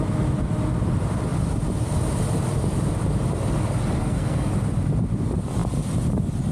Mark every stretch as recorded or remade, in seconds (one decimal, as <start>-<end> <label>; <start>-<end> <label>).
0.0-4.0 recorded; 4.0-4.5 remade; 4.5-6.5 recorded